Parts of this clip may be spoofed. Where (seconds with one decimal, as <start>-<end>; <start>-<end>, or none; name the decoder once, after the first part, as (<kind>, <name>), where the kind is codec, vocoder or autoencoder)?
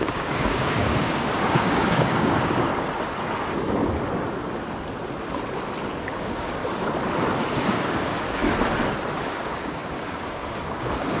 0.0-2.7 (codec, DAC); 6.1-6.6; 7.5-8.4; 9.3-11.2